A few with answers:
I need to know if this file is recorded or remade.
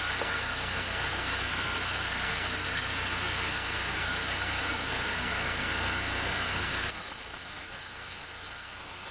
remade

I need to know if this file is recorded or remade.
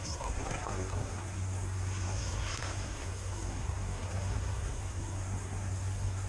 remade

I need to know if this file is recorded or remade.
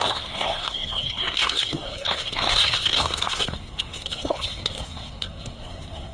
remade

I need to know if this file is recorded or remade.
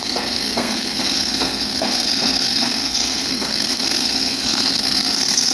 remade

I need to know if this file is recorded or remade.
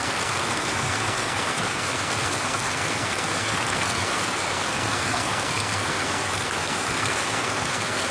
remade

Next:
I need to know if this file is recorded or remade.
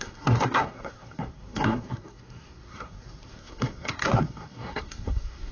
remade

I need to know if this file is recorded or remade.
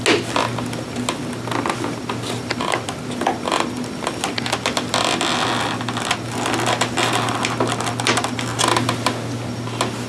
recorded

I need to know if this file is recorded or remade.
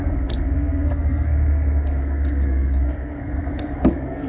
remade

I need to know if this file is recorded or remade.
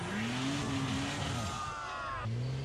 recorded